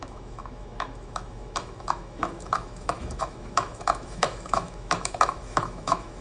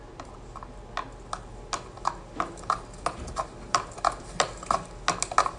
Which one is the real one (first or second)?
second